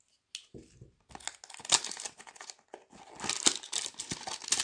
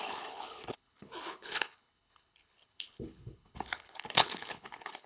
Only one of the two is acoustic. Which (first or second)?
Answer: first